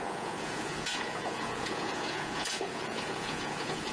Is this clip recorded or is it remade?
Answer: remade